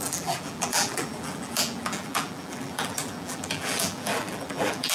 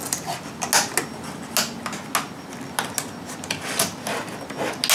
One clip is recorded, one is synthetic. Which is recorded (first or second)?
second